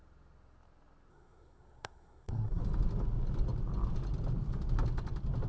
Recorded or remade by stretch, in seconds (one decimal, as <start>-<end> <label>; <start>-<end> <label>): 0.0-1.1 recorded; 1.1-2.6 remade; 2.6-5.5 recorded